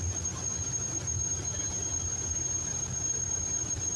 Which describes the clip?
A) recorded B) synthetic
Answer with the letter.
A